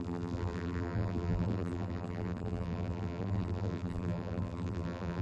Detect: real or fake fake